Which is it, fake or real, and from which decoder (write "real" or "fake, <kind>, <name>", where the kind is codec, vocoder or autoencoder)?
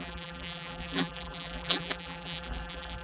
fake, vocoder, BigVGAN v2